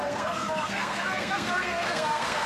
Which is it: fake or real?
fake